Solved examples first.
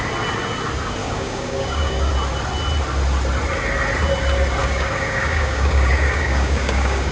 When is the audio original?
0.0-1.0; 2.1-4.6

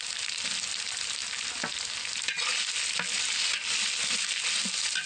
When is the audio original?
0.0-5.1

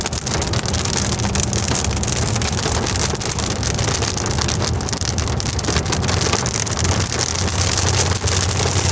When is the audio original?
0.0-8.9

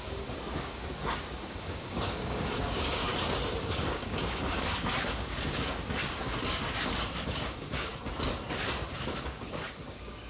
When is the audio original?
3.1-3.6; 7.9-8.6

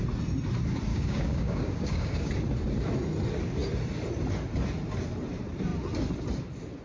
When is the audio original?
0.0-0.9; 2.3-6.8

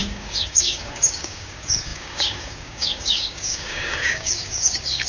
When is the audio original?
none

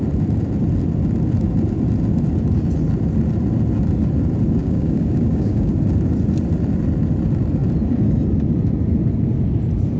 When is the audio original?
0.0-4.6; 5.7-10.0

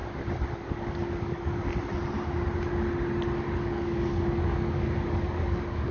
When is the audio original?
0.0-0.5; 1.7-3.6